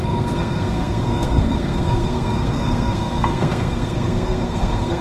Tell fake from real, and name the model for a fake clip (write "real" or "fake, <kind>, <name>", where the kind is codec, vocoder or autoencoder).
fake, codec, SNAC